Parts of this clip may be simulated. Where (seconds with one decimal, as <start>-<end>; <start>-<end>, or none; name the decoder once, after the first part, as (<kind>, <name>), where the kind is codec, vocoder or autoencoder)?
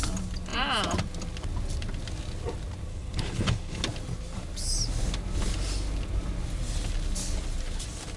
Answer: 2.9-3.8 (codec, HILCodec)